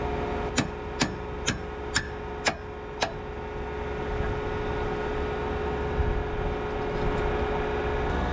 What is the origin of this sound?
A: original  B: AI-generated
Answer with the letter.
A